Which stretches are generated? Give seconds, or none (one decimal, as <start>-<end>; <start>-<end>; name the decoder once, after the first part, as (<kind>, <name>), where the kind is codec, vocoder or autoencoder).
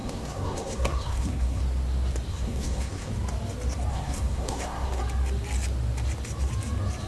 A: 0.0-1.6 (codec, SNAC); 2.3-3.1; 3.9-5.0